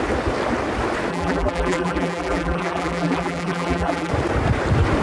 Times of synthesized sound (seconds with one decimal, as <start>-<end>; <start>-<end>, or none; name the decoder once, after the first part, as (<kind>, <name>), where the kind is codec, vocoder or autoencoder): 1.1-4.1 (vocoder, BigVGAN v2)